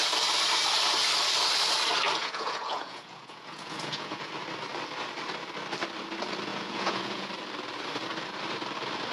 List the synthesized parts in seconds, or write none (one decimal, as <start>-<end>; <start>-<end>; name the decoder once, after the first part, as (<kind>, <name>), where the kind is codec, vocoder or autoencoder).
2.2-4.3 (vocoder, Vocos); 6.5-7.3